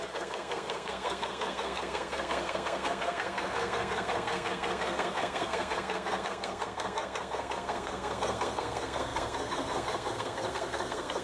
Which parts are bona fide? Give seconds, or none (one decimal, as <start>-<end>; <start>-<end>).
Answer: none